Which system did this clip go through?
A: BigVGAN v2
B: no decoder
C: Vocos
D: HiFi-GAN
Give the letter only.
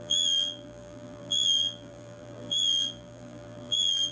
A